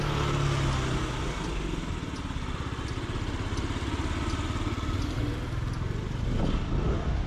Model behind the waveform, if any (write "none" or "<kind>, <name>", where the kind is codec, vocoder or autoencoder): none